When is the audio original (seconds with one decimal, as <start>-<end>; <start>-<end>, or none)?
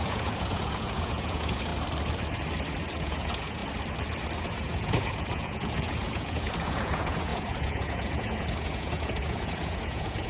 1.7-3.0; 3.6-4.4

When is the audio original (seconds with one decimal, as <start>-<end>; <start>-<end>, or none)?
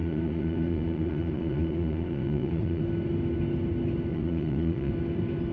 2.8-4.1; 4.9-5.5